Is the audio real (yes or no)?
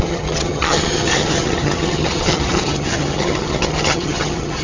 no